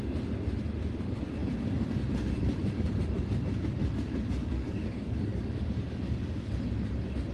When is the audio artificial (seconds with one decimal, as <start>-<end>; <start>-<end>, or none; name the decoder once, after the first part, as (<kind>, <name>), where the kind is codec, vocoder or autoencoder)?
4.4-6.5 (codec, DAC)